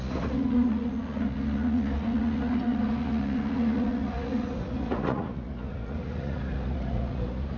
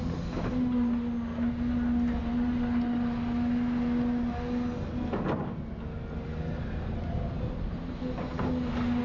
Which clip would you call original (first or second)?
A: second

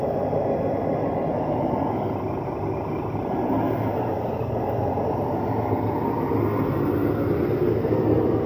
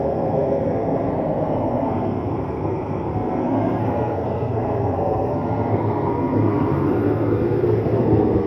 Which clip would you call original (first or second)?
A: first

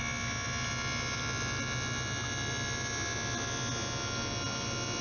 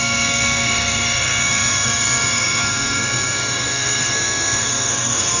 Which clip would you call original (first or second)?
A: first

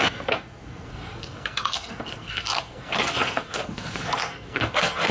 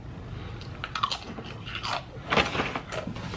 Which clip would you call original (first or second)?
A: second